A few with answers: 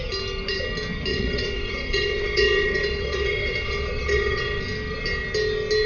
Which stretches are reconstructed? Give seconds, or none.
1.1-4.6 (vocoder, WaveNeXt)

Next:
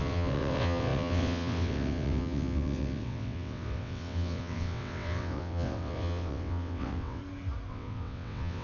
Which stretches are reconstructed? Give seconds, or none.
0.0-7.2 (vocoder, WaveNeXt); 7.7-8.6

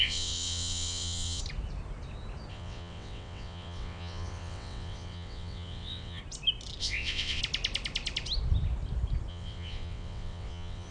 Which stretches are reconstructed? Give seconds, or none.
0.0-1.4 (vocoder, WaveNeXt); 2.5-6.2; 6.8-7.4; 9.3-10.9

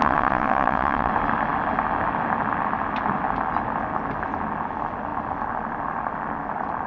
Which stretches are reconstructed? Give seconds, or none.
0.0-1.1 (vocoder, WaveNeXt)

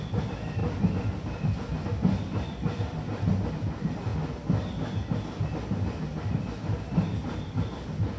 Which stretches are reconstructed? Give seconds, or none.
none